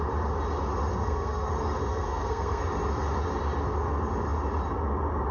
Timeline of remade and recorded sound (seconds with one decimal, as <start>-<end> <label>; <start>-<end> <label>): 0.0-0.9 recorded; 0.9-1.5 remade; 1.5-1.9 recorded; 1.9-2.6 remade; 2.6-5.3 recorded